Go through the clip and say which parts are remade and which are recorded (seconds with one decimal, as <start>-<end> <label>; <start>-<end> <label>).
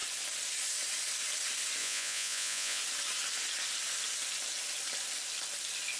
0.0-1.8 recorded; 1.8-2.8 remade; 2.8-6.0 recorded